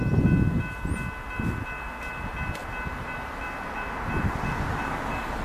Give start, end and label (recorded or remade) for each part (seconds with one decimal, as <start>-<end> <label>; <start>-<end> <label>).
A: 0.0-5.4 recorded